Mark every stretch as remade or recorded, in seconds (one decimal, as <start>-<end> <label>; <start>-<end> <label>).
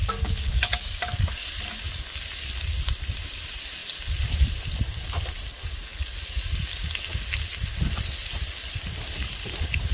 0.0-1.7 remade; 1.7-5.6 recorded; 5.6-6.5 remade; 6.5-9.9 recorded